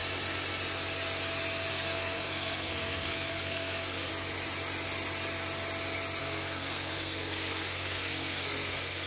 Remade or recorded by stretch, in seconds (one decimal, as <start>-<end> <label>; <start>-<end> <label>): 0.0-1.7 recorded; 1.7-4.1 remade; 4.1-6.2 recorded; 6.2-9.1 remade